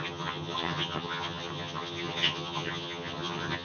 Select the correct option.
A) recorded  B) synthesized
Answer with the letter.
B